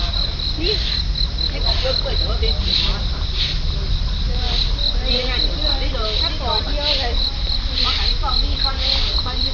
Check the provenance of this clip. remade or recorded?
recorded